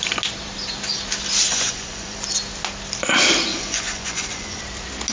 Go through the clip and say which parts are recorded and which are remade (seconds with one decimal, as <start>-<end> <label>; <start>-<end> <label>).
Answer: 0.0-1.5 recorded; 1.5-2.2 remade; 2.2-3.5 recorded; 3.5-4.6 remade; 4.6-5.1 recorded